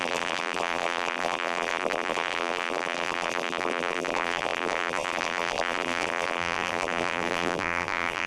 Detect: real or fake fake